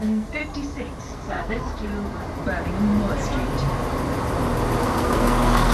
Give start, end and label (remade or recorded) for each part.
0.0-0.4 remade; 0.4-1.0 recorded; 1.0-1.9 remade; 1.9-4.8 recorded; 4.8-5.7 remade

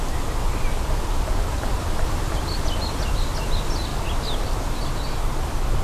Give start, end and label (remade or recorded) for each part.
0.0-5.8 recorded

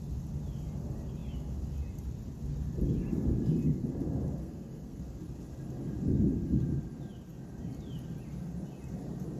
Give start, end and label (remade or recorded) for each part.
0.0-4.4 recorded; 4.4-5.0 remade; 5.0-9.4 recorded